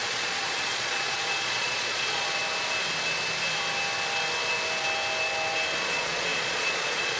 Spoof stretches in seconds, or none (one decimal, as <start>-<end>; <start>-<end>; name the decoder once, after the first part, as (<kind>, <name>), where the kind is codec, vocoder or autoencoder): 0.0-2.4 (vocoder, Vocos); 5.8-7.2

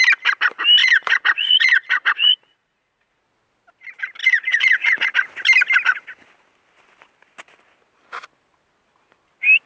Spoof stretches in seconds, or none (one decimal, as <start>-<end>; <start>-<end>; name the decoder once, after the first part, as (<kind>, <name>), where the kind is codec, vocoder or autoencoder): 0.8-3.2 (vocoder, Vocos); 4.2-5.1

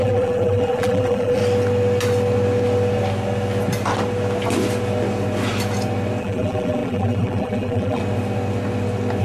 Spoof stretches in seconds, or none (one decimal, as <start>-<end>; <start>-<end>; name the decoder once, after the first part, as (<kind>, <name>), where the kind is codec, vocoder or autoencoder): 0.0-1.4 (vocoder, BigVGAN v2); 6.2-8.0

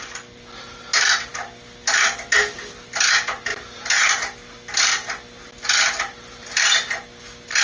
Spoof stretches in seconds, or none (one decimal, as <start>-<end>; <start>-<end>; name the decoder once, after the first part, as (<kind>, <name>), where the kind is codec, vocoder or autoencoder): none

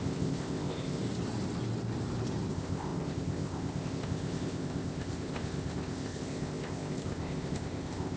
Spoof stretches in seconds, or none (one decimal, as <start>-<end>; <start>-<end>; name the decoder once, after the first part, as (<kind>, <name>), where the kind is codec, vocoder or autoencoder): 0.0-1.0 (codec, ZipCodec); 2.5-8.2

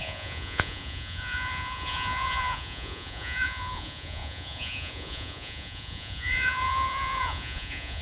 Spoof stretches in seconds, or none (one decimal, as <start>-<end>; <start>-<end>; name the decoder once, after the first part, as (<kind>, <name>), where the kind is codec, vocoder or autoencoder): 0.0-8.0 (vocoder, Vocos)

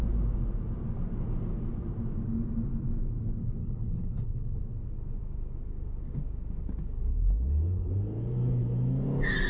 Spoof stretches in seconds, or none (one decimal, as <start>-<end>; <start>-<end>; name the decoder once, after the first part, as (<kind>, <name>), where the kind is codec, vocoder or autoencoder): 3.6-4.6 (codec, HILCodec); 7.1-7.9